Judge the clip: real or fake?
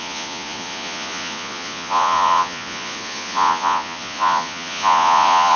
fake